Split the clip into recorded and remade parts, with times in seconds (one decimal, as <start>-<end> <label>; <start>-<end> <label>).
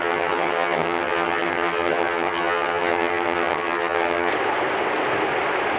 0.0-4.3 remade; 4.3-5.8 recorded